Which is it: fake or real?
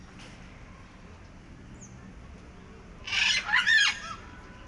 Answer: real